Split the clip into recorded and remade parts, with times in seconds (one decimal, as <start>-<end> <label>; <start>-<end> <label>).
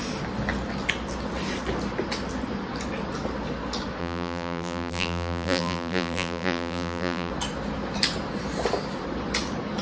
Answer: 0.0-4.0 recorded; 4.0-7.3 remade; 7.3-9.8 recorded